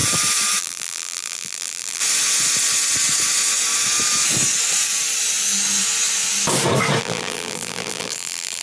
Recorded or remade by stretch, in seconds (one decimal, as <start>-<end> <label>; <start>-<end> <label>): 0.0-0.6 recorded; 0.6-2.0 remade; 2.0-7.0 recorded; 7.0-8.6 remade